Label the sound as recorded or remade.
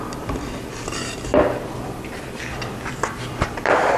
remade